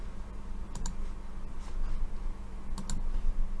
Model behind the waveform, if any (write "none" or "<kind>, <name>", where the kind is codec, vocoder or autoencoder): none